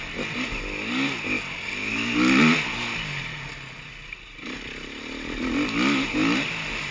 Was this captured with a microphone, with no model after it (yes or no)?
yes